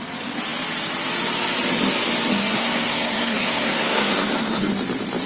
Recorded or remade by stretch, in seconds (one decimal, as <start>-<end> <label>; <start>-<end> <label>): 0.0-2.4 recorded; 2.4-4.7 remade; 4.7-5.3 recorded

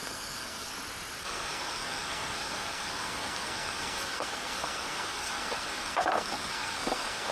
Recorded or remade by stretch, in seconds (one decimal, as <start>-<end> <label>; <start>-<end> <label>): 0.0-0.7 remade; 0.7-1.2 recorded; 1.2-7.3 remade

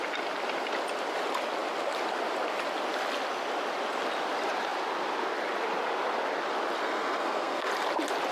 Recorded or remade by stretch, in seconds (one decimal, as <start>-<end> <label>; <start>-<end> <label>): 0.0-6.8 recorded; 6.8-7.7 remade; 7.7-8.3 recorded

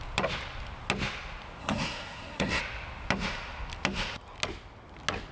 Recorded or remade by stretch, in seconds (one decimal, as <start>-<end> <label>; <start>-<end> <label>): 0.0-1.6 recorded; 1.6-2.6 remade; 2.6-5.3 recorded

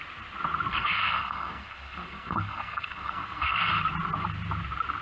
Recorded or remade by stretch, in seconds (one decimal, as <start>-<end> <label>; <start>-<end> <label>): 0.0-0.7 recorded; 0.7-3.7 remade; 3.7-5.0 recorded

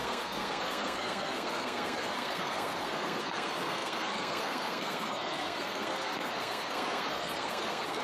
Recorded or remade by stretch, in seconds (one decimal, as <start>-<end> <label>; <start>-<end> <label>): 0.0-8.0 remade

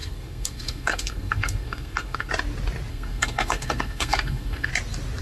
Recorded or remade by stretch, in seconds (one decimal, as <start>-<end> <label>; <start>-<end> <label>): 0.0-2.3 remade; 2.3-2.9 recorded; 2.9-4.7 remade; 4.7-5.2 recorded